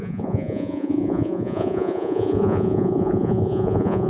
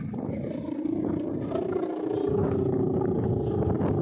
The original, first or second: second